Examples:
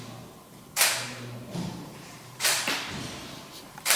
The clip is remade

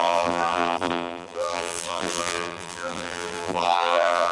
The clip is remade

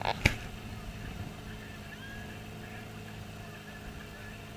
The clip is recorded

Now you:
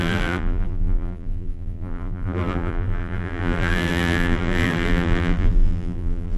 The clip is remade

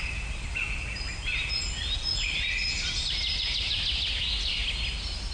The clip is recorded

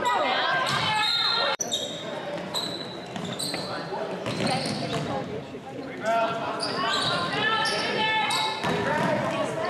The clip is remade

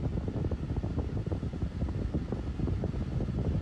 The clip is recorded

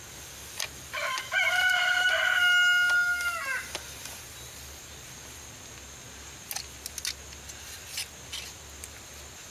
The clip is recorded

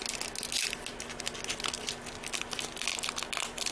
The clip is recorded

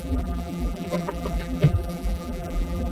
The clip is remade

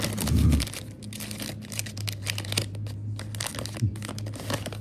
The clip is recorded